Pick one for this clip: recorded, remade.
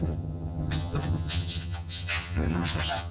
remade